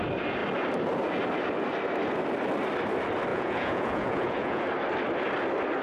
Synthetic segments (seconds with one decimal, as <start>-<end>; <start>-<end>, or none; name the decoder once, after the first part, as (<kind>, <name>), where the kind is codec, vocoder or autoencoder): 3.3-4.6 (vocoder, Vocos)